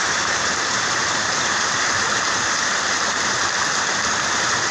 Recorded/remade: remade